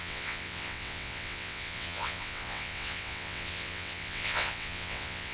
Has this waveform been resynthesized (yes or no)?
yes